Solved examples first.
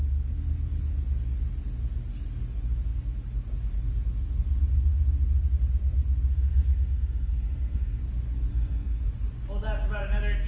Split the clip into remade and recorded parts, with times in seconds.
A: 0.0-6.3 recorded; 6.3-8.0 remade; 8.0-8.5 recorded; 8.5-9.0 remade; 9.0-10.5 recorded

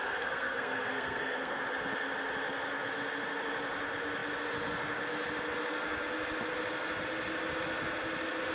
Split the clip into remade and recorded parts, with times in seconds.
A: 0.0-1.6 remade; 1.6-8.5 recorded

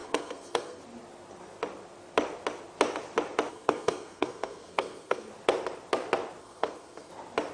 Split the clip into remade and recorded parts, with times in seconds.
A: 0.0-0.8 remade; 0.8-3.5 recorded; 3.5-5.3 remade; 5.3-6.4 recorded; 6.4-7.1 remade; 7.1-7.5 recorded